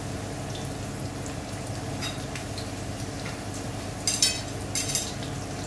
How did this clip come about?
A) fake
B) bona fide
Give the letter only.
B